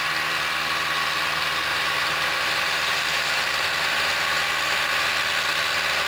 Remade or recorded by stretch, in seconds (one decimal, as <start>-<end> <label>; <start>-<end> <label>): 0.0-1.7 recorded; 1.7-4.1 remade; 4.1-6.1 recorded